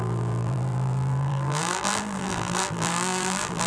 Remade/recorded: remade